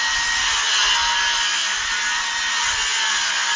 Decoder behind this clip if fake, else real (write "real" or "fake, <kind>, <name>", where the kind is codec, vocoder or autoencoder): real